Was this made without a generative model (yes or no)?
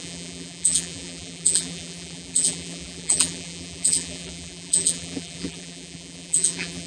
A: no